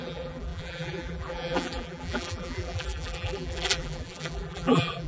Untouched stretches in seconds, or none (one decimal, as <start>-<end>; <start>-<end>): none